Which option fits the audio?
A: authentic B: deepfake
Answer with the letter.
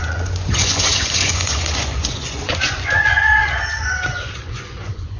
B